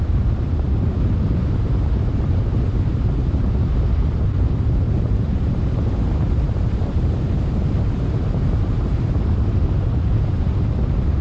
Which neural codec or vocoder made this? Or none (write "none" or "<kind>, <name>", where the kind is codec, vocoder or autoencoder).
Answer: vocoder, BigVGAN v2